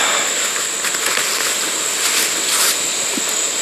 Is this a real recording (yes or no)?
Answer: yes